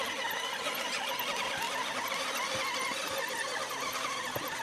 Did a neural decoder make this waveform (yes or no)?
no